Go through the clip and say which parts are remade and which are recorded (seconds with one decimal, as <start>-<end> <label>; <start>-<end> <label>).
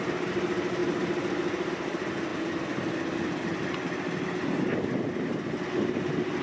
0.0-6.4 recorded